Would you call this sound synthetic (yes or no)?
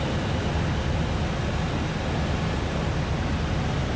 no